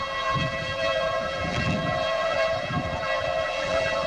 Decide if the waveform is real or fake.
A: fake